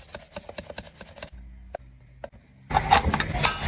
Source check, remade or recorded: recorded